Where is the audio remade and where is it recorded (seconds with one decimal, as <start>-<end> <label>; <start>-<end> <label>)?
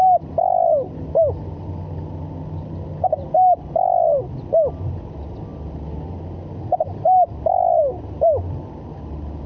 0.0-9.5 recorded